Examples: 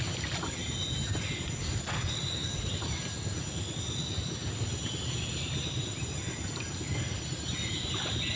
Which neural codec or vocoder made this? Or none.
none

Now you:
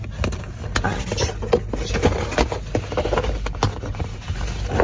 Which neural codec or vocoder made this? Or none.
none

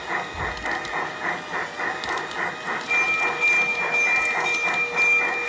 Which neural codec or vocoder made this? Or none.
none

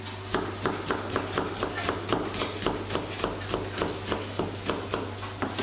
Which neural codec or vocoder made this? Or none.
none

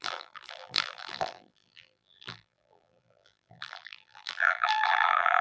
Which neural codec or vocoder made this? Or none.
vocoder, BigVGAN v2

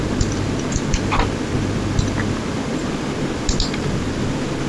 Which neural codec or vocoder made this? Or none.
vocoder, BigVGAN v2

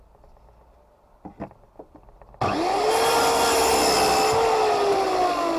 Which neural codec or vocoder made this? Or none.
none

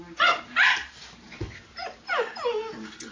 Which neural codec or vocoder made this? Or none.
none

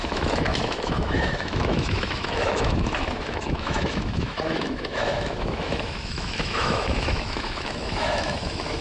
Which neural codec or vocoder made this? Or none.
autoencoder, DAC-VAE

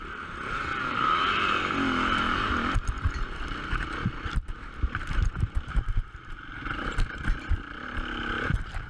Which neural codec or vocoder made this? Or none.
none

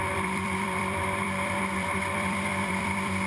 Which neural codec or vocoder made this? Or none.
vocoder, BigVGAN v2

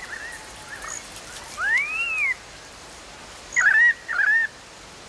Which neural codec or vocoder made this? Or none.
none